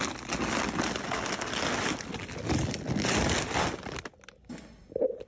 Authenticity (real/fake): real